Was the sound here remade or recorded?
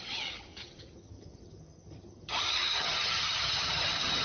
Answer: remade